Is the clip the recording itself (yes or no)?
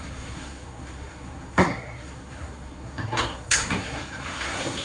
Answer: no